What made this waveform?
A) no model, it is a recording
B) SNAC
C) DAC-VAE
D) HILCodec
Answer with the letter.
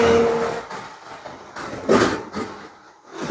A